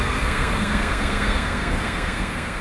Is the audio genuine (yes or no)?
no